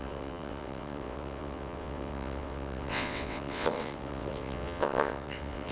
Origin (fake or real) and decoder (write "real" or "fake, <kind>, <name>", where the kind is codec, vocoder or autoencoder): fake, vocoder, WaveNeXt